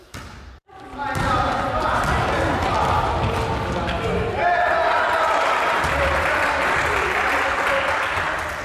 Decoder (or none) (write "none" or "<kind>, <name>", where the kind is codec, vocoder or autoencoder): none